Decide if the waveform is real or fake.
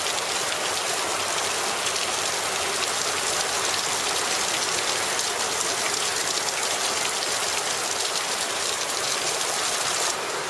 real